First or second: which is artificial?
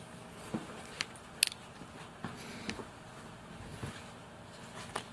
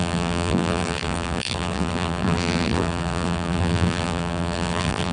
second